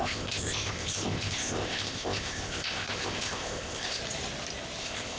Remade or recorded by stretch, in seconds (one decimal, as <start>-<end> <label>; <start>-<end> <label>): 0.0-4.0 remade; 4.0-4.8 recorded; 4.8-5.2 remade

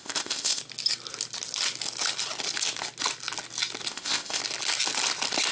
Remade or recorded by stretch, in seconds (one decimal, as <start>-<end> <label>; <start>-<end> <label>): 0.0-0.6 remade; 0.6-3.9 recorded; 3.9-4.4 remade; 4.4-5.5 recorded